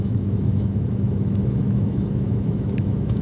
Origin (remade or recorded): remade